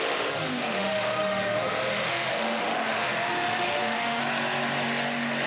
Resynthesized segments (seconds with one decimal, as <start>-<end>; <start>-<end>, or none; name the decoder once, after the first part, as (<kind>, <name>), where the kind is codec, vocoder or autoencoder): 0.0-4.2 (autoencoder, DAC-VAE)